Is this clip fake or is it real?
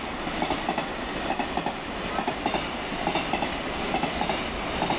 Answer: real